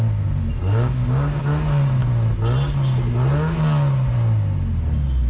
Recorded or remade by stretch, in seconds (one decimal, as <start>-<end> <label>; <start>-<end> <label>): 0.0-0.6 recorded; 0.6-1.4 remade; 1.4-5.3 recorded